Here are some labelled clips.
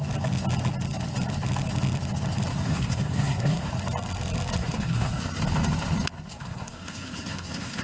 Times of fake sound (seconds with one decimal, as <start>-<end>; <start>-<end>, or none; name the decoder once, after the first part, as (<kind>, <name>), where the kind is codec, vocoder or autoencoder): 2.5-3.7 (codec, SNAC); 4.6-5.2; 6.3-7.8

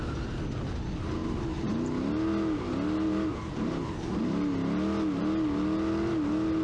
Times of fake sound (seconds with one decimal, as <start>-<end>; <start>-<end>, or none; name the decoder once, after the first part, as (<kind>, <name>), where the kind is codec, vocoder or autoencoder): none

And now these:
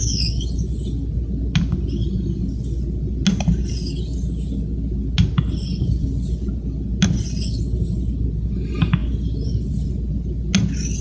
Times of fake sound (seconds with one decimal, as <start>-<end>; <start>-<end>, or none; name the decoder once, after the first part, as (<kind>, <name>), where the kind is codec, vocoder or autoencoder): none

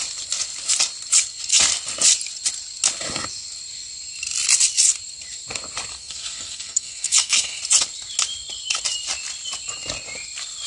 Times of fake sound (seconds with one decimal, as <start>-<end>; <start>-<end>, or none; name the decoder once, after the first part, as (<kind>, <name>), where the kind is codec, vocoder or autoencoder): 5.9-7.6 (codec, SNAC)

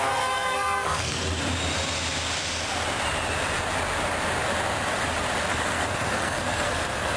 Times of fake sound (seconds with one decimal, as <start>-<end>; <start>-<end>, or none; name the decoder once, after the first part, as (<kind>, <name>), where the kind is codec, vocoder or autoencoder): 0.0-1.2 (codec, SNAC); 5.5-7.2

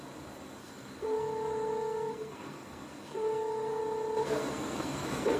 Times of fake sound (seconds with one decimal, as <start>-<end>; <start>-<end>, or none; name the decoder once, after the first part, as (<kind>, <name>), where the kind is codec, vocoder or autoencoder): 0.6-3.8 (codec, SNAC); 4.2-5.4

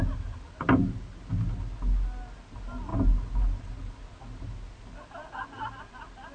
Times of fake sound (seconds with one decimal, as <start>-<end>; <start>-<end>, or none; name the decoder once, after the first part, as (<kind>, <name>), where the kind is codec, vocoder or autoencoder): none

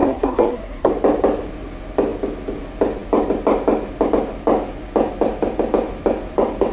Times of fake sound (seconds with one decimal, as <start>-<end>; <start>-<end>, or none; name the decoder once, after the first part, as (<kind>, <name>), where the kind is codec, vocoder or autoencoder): 0.0-0.9 (codec, SNAC)